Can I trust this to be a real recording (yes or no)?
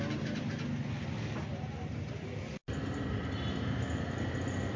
yes